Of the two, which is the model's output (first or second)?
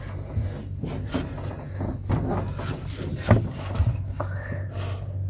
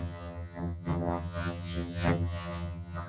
second